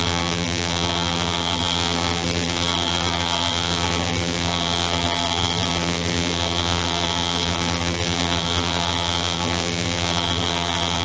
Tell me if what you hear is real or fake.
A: fake